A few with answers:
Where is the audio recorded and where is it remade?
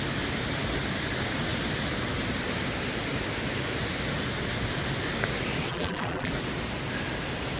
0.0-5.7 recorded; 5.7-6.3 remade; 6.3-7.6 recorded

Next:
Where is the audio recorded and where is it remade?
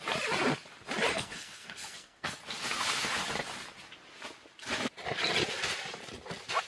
0.0-1.1 recorded; 1.1-2.4 remade; 2.4-6.7 recorded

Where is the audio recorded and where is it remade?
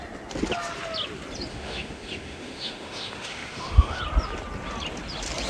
0.0-1.5 recorded; 1.5-4.0 remade; 4.0-5.5 recorded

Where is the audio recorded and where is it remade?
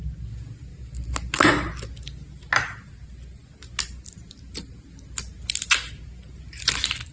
0.0-7.1 recorded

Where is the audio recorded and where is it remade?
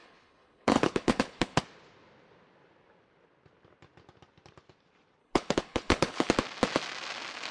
0.0-1.6 remade; 1.6-5.2 recorded; 5.2-6.3 remade; 6.3-7.5 recorded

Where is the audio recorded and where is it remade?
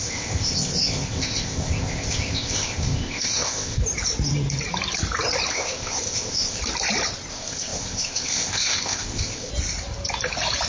0.0-3.8 remade; 3.8-5.5 recorded; 5.5-6.6 remade; 6.6-7.3 recorded; 7.3-9.5 remade; 9.5-10.7 recorded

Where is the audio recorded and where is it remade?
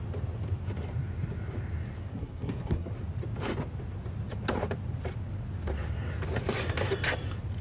0.0-2.1 recorded; 2.1-2.9 remade; 2.9-7.6 recorded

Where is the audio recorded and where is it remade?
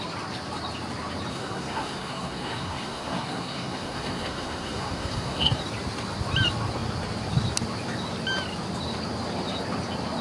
0.0-1.3 recorded; 1.3-5.6 remade; 5.6-10.2 recorded